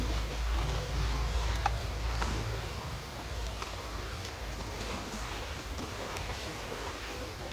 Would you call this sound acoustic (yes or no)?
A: no